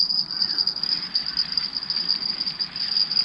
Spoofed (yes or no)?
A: no